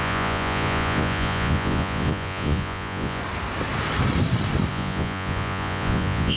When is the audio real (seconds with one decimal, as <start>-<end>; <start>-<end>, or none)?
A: 3.2-4.7